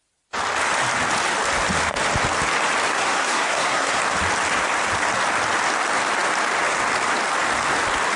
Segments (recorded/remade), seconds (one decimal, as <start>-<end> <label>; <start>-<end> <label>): 0.0-2.9 recorded; 2.9-4.0 remade; 4.0-8.2 recorded